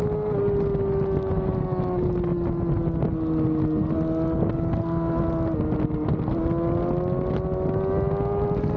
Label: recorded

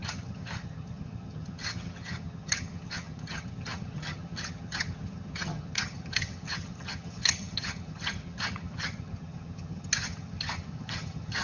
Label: remade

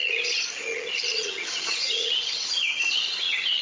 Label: remade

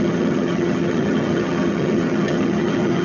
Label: remade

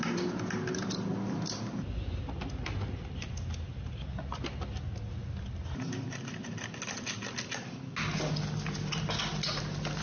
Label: recorded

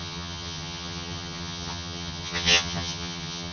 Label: remade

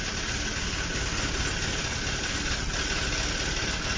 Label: recorded